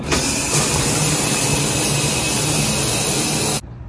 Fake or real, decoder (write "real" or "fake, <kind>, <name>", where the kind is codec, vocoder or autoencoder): real